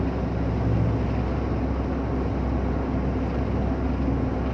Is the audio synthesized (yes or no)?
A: no